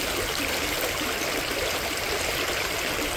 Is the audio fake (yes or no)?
no